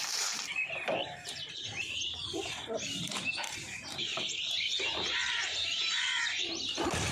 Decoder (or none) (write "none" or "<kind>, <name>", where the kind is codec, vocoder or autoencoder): vocoder, BigVGAN v2